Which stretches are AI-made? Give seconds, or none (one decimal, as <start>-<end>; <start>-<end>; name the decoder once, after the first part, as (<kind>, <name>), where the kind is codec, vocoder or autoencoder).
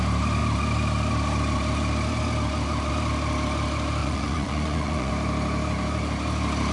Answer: 4.0-5.1 (vocoder, Vocos)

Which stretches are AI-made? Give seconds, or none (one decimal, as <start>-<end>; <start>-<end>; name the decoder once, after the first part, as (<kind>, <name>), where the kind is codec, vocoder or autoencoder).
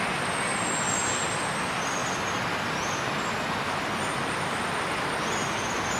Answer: none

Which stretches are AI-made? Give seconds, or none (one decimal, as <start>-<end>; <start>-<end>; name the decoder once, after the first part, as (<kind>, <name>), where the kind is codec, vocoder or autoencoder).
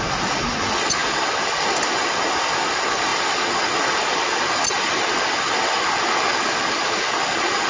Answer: none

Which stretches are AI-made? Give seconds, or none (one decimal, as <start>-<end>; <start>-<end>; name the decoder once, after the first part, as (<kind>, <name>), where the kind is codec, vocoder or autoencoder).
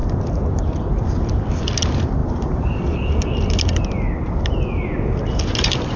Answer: 0.0-0.7 (vocoder, BigVGAN v2); 2.2-3.5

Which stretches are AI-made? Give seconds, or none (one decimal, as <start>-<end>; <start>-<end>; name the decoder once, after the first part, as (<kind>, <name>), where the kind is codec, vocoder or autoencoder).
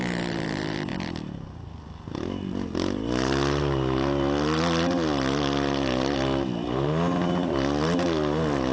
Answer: none